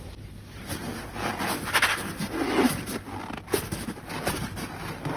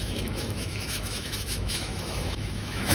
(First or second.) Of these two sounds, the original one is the first